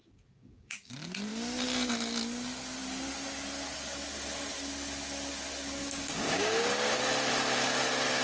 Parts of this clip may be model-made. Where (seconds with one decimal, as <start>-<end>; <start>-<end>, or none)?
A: 0.0-0.9; 5.8-7.0